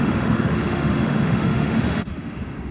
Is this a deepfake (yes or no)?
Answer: yes